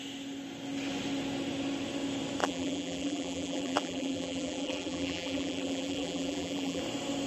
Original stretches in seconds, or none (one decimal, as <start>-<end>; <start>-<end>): 0.0-2.4; 6.8-7.3